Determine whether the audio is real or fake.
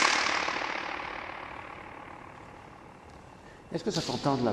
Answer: real